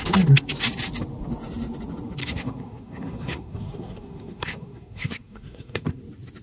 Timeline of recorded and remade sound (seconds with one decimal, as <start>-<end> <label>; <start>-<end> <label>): 0.0-2.2 recorded; 2.2-6.0 remade; 6.0-6.4 recorded

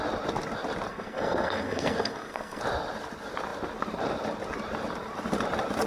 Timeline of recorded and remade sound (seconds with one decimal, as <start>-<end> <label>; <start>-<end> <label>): 0.0-0.9 recorded; 0.9-2.6 remade; 2.6-5.9 recorded

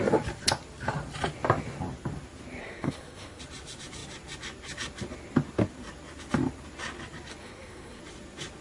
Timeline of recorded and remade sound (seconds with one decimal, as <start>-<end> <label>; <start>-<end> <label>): 0.0-2.6 recorded; 2.6-3.4 remade; 3.4-7.4 recorded; 7.4-8.0 remade; 8.0-8.6 recorded